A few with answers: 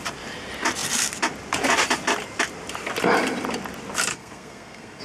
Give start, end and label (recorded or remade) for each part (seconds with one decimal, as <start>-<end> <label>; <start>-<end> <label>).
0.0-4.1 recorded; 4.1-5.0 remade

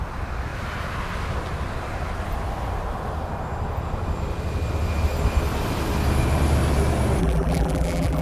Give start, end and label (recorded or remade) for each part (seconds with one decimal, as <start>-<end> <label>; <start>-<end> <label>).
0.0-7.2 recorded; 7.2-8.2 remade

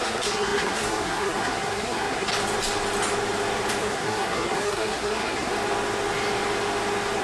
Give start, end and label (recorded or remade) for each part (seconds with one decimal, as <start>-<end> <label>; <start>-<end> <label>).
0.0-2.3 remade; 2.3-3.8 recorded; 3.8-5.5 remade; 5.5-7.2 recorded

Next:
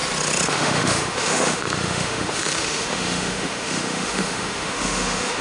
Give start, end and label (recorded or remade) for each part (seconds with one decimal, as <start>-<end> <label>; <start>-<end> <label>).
0.0-0.5 recorded; 0.5-5.4 remade